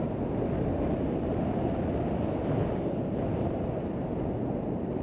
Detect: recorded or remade recorded